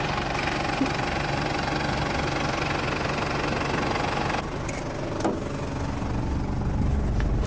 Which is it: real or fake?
real